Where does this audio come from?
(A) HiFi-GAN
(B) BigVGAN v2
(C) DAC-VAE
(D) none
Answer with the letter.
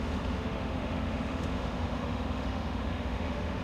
C